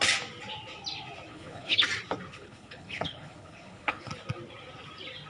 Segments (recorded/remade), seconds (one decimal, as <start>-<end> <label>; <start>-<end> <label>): 0.0-1.3 recorded; 1.3-1.8 remade; 1.8-2.3 recorded; 2.3-4.1 remade; 4.1-5.3 recorded